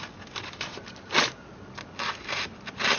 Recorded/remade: recorded